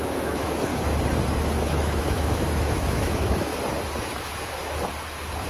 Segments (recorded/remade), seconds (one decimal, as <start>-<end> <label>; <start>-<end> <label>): 0.0-0.7 remade; 0.7-1.6 recorded; 1.6-3.5 remade; 3.5-4.0 recorded; 4.0-4.6 remade; 4.6-5.5 recorded